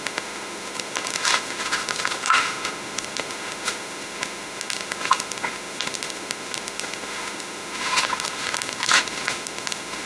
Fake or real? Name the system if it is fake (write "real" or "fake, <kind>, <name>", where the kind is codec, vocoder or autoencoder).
fake, autoencoder, DAC-VAE